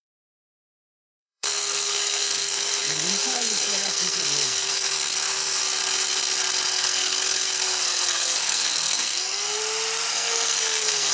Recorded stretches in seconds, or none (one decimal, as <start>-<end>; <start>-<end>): 5.6-6.7; 9.6-10.1